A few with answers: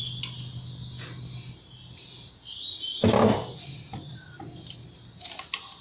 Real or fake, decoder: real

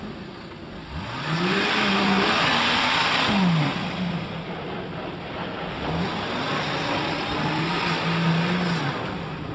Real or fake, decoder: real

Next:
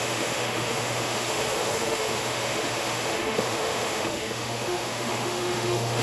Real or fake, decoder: fake, autoencoder, DAC-VAE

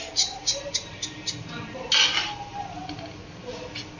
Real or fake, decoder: real